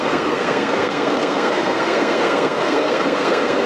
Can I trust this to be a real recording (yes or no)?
no